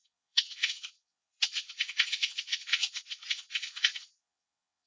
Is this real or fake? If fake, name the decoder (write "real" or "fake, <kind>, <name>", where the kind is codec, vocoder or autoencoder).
fake, vocoder, WaveNeXt